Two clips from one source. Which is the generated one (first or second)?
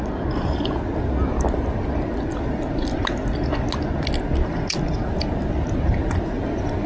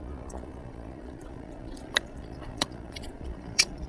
second